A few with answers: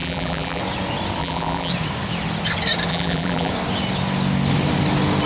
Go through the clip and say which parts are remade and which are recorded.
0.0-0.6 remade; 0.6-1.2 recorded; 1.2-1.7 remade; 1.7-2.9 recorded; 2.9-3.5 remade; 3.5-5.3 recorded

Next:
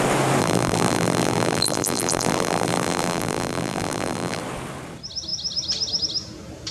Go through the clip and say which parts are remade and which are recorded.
0.0-0.4 recorded; 0.4-4.4 remade; 4.4-6.7 recorded

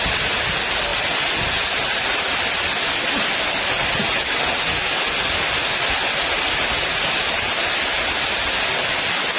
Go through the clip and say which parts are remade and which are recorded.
0.0-9.4 recorded

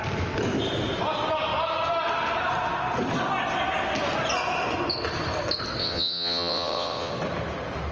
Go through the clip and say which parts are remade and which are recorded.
0.0-5.8 recorded; 5.8-7.1 remade; 7.1-7.9 recorded